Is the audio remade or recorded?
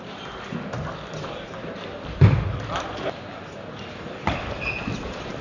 recorded